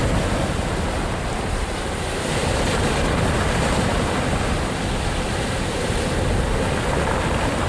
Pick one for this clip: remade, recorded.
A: recorded